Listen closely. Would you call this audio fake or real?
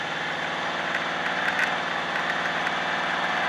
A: real